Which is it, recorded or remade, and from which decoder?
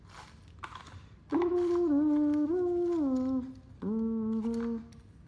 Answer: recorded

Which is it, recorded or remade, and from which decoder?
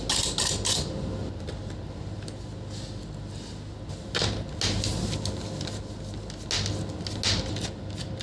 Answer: recorded